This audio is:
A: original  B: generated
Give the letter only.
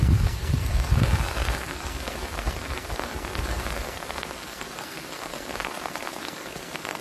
B